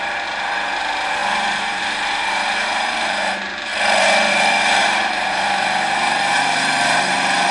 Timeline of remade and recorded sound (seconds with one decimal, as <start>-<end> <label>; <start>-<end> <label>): 0.0-3.7 remade; 3.7-4.3 recorded; 4.3-7.5 remade